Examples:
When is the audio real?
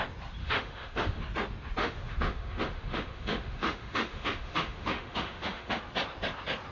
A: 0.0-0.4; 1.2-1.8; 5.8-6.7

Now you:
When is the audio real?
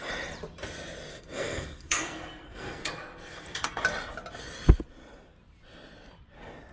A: 0.0-1.1; 3.8-6.7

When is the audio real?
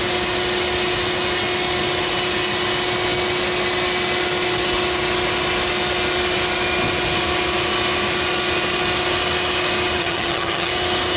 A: 0.0-10.0; 10.7-11.2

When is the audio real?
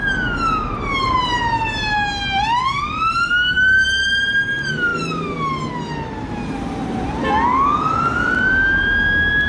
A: 0.0-9.5